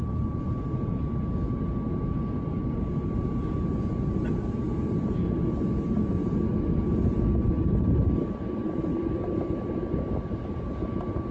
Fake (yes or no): no